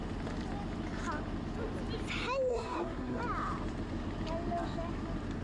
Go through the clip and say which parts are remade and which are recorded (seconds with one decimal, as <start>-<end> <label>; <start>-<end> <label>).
0.0-2.5 recorded; 2.5-3.2 remade; 3.2-5.4 recorded